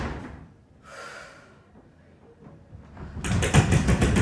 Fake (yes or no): no